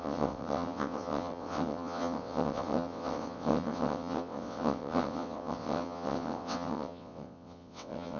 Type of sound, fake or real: fake